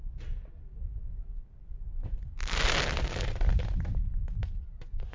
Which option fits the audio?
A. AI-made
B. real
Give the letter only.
B